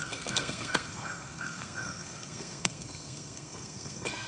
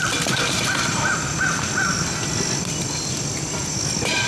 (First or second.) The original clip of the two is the second